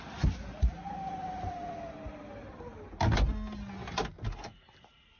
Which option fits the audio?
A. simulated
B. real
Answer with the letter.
B